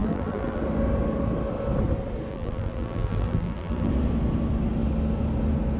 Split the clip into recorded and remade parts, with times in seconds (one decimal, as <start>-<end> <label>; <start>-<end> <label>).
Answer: 0.0-0.6 remade; 0.6-2.3 recorded; 2.3-3.9 remade; 3.9-5.8 recorded